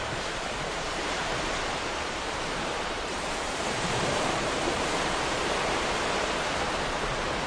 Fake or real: fake